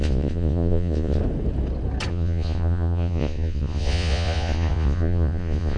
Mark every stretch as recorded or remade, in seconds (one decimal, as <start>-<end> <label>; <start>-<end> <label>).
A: 0.0-1.2 remade; 1.2-2.1 recorded; 2.1-5.8 remade